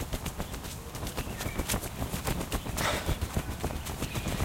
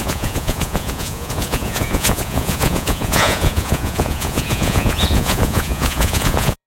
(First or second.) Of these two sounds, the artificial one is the second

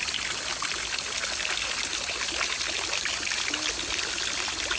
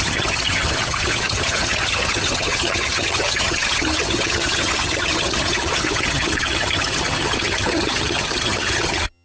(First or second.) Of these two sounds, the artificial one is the second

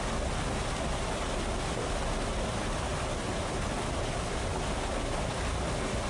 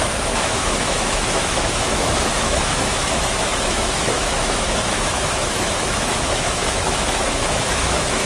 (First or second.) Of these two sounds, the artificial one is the second